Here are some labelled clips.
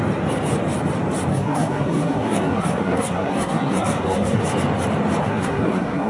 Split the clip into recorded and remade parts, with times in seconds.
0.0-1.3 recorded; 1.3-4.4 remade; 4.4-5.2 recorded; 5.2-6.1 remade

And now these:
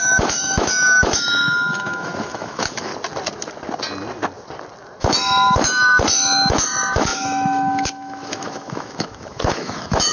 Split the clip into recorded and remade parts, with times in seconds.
0.0-2.9 remade; 2.9-5.0 recorded; 5.0-10.1 remade